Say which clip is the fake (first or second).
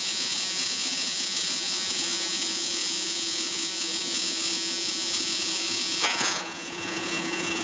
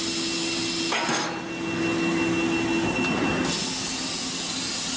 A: first